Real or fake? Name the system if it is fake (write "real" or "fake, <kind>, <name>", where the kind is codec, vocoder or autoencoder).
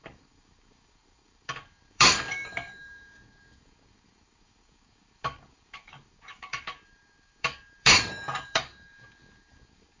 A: fake, codec, DAC